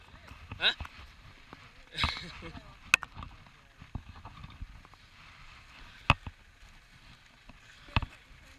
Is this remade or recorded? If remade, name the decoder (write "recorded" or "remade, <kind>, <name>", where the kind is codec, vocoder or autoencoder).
recorded